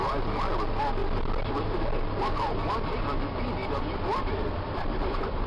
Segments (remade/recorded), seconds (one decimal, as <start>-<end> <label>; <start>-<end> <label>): 0.0-3.6 recorded; 3.6-5.5 remade